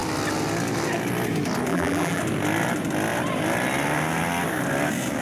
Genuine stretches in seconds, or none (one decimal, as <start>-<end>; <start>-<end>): 0.0-1.7; 2.2-5.2